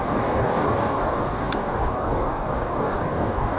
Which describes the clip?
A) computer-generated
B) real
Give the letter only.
A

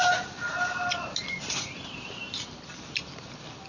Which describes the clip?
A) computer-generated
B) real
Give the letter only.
B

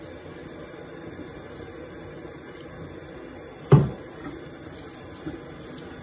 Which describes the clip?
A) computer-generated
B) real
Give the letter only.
B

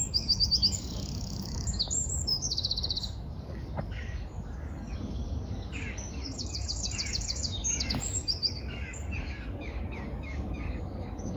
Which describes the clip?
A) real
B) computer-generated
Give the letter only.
B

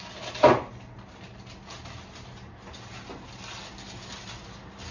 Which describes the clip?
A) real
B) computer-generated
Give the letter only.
A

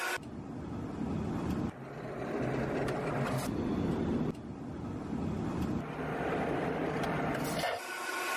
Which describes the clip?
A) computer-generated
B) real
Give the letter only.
B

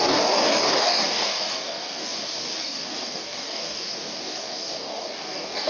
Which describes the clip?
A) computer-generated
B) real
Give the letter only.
A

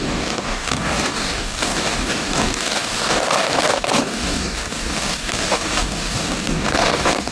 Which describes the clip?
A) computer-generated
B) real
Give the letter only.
A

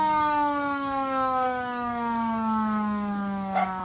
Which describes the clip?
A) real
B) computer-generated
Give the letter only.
B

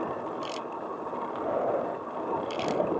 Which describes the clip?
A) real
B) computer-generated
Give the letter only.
A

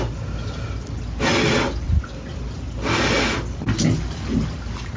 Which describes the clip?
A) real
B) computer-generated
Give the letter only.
A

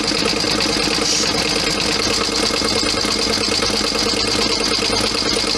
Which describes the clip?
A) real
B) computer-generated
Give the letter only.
A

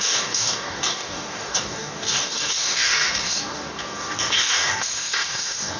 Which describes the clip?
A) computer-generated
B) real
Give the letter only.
A